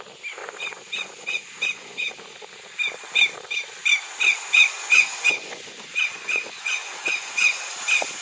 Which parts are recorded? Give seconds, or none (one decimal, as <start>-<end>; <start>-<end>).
0.0-0.4; 2.1-4.3; 7.6-8.2